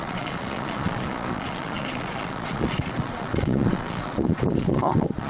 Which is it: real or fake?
fake